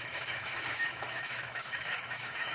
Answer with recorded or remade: remade